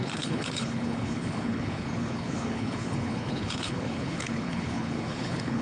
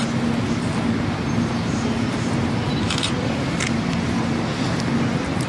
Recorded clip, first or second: second